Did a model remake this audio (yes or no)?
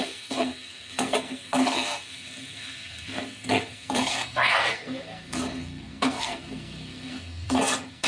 yes